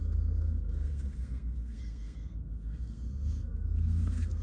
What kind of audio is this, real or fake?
fake